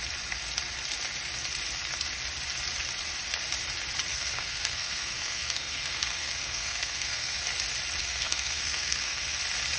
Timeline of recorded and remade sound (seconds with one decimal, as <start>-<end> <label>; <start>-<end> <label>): 0.0-4.1 recorded; 4.1-7.4 remade; 7.4-8.0 recorded; 8.0-9.4 remade; 9.4-9.8 recorded